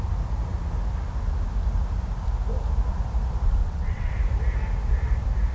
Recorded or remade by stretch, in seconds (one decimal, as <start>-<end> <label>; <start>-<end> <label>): 0.0-3.6 recorded; 3.6-4.1 remade; 4.1-5.5 recorded